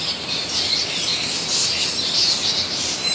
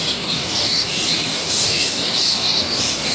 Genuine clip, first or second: first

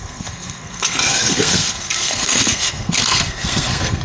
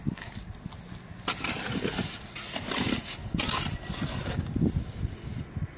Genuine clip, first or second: second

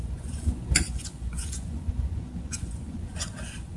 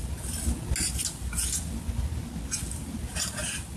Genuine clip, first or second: second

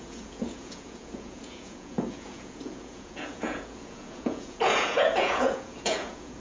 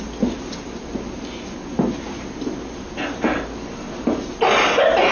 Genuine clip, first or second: second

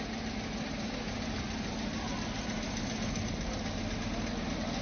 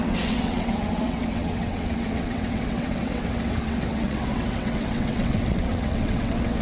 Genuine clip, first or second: first